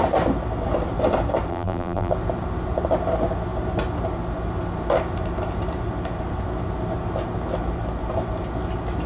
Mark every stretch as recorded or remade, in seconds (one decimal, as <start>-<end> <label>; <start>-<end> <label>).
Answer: 0.0-1.5 recorded; 1.5-2.1 remade; 2.1-9.1 recorded